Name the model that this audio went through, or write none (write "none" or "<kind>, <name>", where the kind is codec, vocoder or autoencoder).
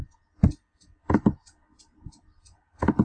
none